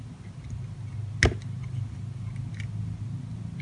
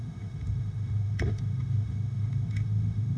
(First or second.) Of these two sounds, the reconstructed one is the second